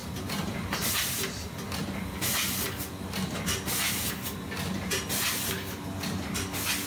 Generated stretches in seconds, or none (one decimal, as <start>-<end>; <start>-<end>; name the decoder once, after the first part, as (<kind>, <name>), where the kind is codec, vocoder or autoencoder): 0.0-1.0 (vocoder, BigVGAN v2); 3.5-4.1